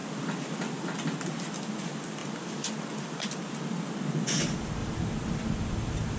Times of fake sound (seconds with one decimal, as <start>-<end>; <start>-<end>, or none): 0.0-0.8; 2.2-3.8; 4.8-5.4